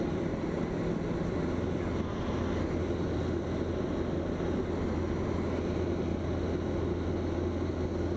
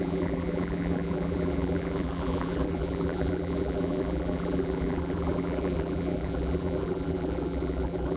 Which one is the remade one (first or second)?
second